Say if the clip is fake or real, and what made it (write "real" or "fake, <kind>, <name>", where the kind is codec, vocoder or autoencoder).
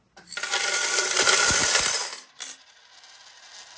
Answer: real